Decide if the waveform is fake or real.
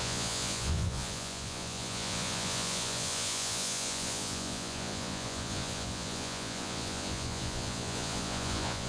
fake